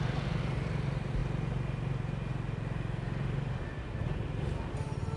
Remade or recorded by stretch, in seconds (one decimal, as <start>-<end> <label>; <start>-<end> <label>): 0.0-5.2 recorded